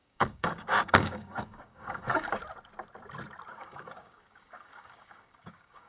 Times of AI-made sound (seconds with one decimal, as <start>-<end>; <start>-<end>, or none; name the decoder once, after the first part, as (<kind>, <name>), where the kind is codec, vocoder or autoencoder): 0.0-2.4 (codec, DAC); 3.5-5.9